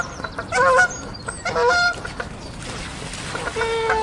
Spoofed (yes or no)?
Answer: no